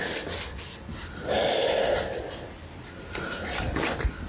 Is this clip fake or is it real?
real